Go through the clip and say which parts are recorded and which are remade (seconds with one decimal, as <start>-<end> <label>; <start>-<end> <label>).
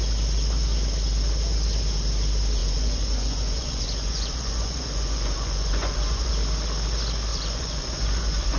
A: 0.0-2.6 recorded; 2.6-6.3 remade; 6.3-7.3 recorded; 7.3-8.6 remade